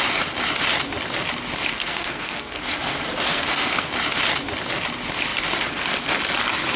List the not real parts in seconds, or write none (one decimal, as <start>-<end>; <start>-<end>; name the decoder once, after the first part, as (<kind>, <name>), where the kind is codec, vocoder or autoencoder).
1.7-2.6 (codec, SNAC); 3.3-3.9